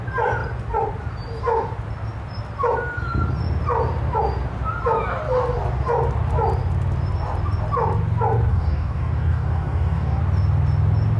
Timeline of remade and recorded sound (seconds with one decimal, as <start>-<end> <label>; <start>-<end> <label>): 0.0-8.5 recorded; 8.5-10.2 remade; 10.2-11.2 recorded